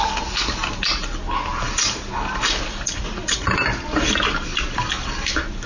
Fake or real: real